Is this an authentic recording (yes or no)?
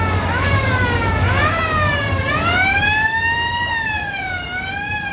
no